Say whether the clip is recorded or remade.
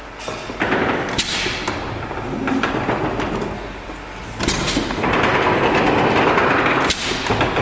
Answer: recorded